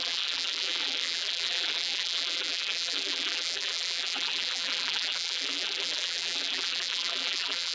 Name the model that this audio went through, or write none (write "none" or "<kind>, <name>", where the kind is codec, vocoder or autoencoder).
vocoder, BigVGAN v2